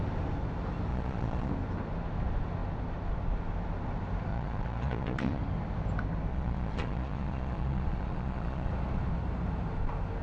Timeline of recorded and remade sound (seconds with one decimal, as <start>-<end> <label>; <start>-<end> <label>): 0.0-0.9 recorded; 0.9-1.5 remade; 1.5-4.3 recorded; 4.3-5.4 remade; 5.4-6.3 recorded; 6.3-8.7 remade; 8.7-10.2 recorded